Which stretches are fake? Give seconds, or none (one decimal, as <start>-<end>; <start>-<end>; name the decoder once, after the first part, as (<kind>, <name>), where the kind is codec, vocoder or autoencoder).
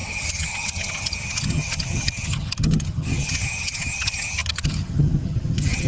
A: 0.0-5.9 (vocoder, HiFi-GAN)